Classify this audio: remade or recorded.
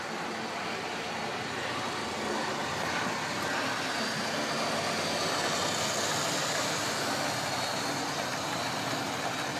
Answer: recorded